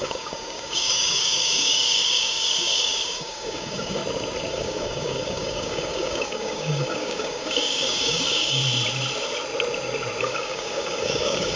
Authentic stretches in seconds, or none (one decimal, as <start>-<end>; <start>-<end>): 4.0-4.5; 8.6-10.2